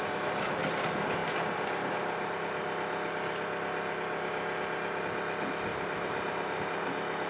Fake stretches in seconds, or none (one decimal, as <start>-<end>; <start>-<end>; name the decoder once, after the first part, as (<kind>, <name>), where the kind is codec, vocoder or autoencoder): 5.7-6.6 (vocoder, BigVGAN v2)